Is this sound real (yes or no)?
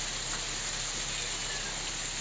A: yes